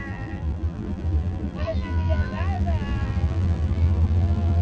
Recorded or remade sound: remade